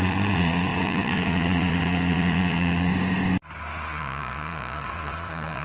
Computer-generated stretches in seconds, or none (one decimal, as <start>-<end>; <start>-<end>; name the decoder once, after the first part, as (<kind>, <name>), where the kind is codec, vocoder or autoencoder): 0.0-2.9 (vocoder, Vocos); 3.7-5.6